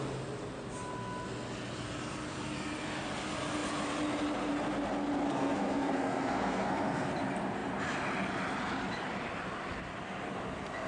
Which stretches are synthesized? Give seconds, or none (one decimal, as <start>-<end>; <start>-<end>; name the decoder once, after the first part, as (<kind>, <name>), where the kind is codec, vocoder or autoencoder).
5.3-7.1 (codec, SNAC)